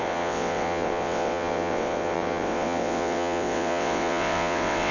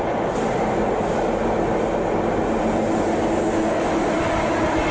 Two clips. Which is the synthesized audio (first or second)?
first